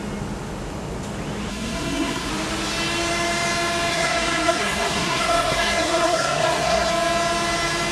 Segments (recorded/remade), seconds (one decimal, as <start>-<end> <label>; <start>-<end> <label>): 0.0-1.5 recorded; 1.5-2.3 remade; 2.3-3.9 recorded; 3.9-6.9 remade; 6.9-7.9 recorded